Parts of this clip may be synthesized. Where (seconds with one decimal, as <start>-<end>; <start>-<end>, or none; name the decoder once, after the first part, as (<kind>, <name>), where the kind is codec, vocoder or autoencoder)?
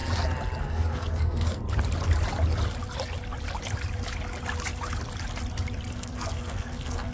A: 0.6-1.6 (codec, SNAC); 5.9-7.1